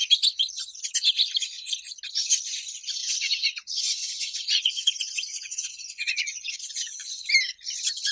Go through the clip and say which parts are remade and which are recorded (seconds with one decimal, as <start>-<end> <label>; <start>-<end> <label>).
0.0-3.0 recorded; 3.0-7.3 remade; 7.3-8.1 recorded